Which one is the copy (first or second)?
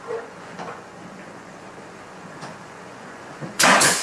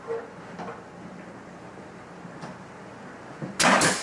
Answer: first